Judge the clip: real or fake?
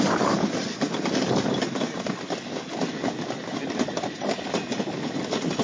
real